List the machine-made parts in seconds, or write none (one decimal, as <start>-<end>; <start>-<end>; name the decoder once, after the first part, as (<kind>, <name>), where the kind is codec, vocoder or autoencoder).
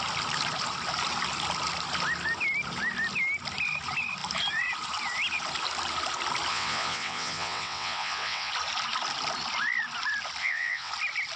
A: 6.5-8.5 (vocoder, WaveNeXt); 10.4-10.9